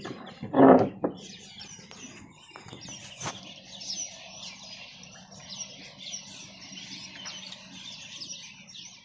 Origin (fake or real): real